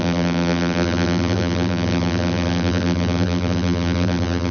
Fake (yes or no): yes